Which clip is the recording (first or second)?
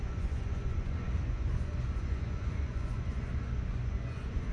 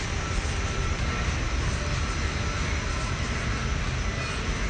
second